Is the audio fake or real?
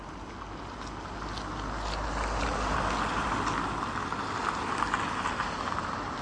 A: real